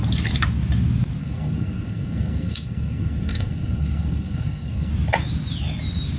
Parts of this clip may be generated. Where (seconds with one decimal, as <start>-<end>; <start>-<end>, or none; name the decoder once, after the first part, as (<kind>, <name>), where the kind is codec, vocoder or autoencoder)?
1.2-4.9 (codec, SNAC)